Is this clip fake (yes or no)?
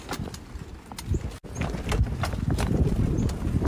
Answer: no